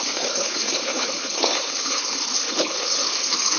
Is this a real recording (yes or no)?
no